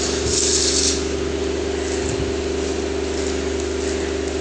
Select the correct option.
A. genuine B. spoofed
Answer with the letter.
A